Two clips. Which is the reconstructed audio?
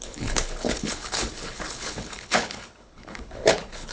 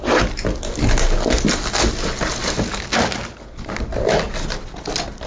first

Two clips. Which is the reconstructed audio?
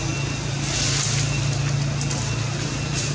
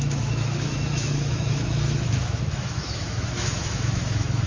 second